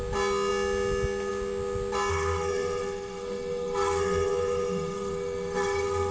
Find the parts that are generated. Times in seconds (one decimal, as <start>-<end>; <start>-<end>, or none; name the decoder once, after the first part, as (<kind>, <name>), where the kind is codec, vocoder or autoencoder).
2.1-6.1 (codec, SNAC)